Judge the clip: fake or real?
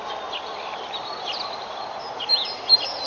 real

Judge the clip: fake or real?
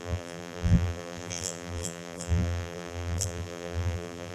fake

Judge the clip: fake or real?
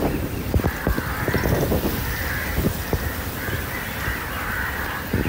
fake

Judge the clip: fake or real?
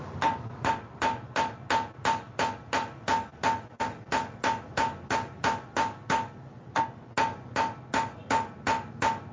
real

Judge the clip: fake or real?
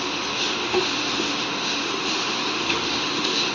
fake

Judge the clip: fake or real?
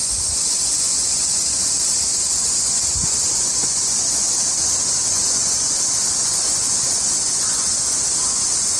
fake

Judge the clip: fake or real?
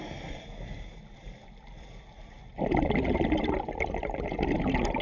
real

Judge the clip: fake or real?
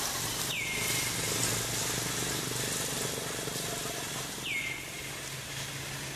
real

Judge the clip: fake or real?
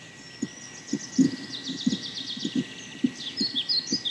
real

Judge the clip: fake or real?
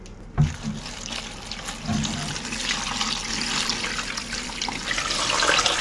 real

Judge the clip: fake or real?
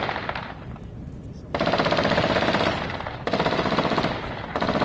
real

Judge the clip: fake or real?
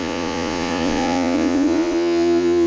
fake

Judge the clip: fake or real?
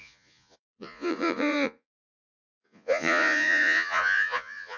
fake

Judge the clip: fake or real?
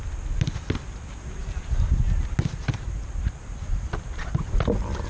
real